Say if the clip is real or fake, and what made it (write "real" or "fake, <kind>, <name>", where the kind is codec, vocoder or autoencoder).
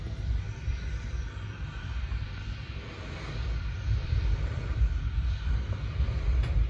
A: fake, vocoder, BigVGAN v2